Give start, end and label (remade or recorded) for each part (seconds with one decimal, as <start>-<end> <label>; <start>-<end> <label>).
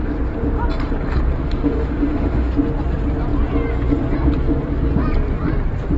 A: 0.0-1.4 recorded; 1.4-2.5 remade; 2.5-6.0 recorded